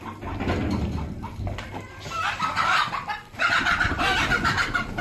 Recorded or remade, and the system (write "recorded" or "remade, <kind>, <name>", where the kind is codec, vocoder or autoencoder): recorded